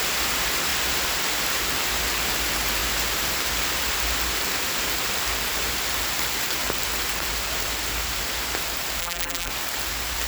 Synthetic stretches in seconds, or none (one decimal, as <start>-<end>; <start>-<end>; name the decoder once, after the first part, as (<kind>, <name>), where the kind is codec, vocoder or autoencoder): 9.0-9.5 (vocoder, BigVGAN v2)